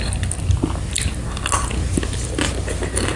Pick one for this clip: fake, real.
real